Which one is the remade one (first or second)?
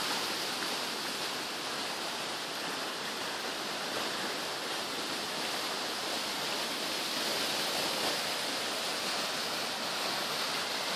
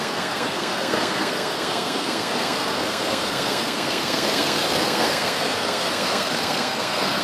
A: second